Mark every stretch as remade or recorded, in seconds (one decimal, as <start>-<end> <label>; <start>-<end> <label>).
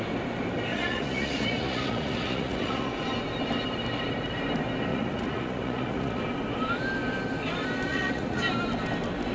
0.0-0.7 recorded; 0.7-2.9 remade; 2.9-4.9 recorded; 4.9-6.2 remade; 6.2-7.9 recorded; 7.9-8.4 remade; 8.4-9.3 recorded